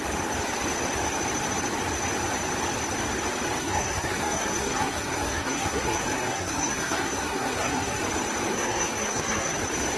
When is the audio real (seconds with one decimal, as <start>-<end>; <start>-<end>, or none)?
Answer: 0.0-3.6; 8.0-8.5; 9.6-10.0